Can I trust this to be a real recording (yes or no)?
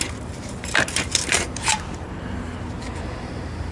no